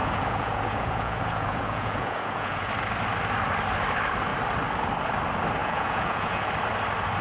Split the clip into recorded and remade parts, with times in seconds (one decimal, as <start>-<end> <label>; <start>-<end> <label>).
0.0-2.7 remade; 2.7-5.6 recorded; 5.6-6.5 remade; 6.5-7.2 recorded